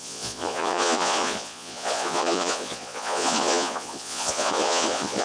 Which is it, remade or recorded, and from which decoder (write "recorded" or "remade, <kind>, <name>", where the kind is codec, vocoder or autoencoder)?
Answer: remade, vocoder, Vocos